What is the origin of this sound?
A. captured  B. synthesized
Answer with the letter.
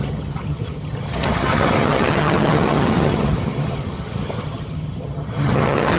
B